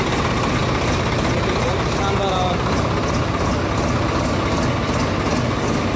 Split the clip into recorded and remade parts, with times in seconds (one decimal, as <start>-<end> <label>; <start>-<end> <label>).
0.0-6.0 recorded